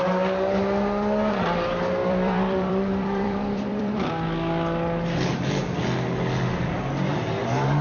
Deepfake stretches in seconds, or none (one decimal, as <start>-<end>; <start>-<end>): 2.0-4.1